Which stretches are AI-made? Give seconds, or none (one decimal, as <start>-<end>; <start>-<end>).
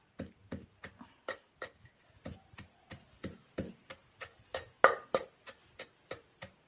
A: none